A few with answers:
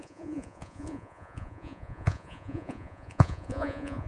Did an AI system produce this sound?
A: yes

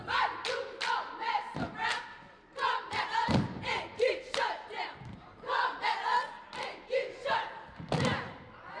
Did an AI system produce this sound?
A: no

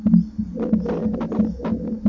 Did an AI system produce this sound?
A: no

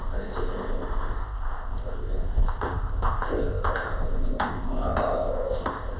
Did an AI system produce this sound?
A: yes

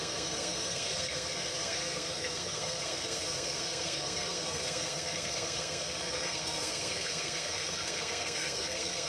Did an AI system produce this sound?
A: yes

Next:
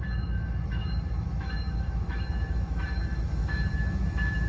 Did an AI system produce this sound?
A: yes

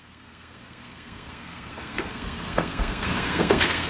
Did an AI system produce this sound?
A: yes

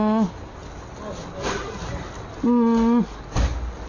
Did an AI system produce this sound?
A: no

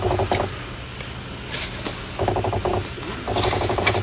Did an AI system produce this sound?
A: no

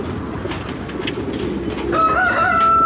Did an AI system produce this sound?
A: no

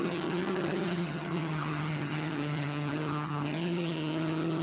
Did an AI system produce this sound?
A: yes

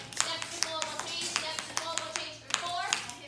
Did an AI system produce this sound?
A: no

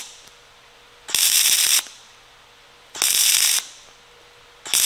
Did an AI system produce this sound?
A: no